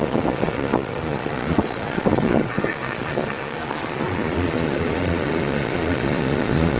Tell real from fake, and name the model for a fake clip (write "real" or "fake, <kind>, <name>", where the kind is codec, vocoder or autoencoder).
fake, vocoder, Vocos